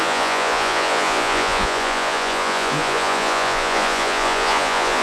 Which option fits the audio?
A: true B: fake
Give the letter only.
B